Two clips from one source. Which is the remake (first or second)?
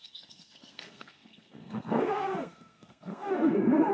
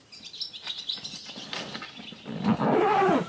first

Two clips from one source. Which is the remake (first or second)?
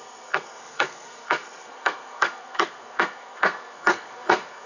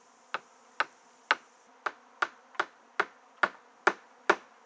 first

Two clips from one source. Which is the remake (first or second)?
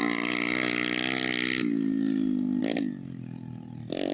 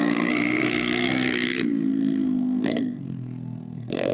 second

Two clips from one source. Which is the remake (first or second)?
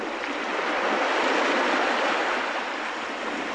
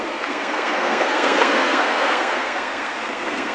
second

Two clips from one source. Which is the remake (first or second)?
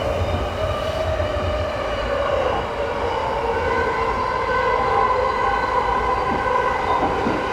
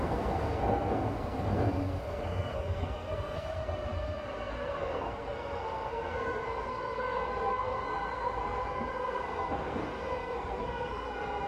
second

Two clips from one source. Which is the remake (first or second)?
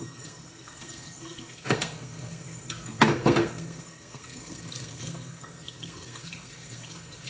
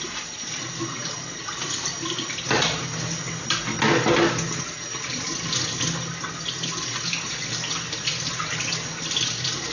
first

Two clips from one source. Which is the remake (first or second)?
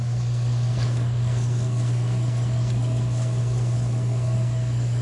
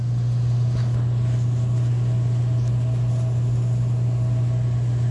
first